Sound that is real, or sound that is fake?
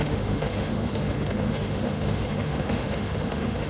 fake